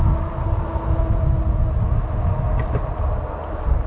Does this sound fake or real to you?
real